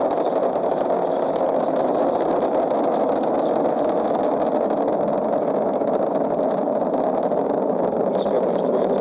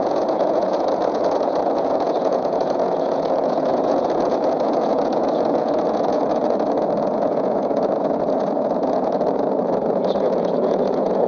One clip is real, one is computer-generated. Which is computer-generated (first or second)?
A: second